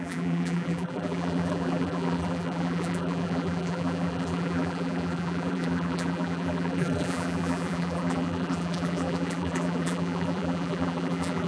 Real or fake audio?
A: fake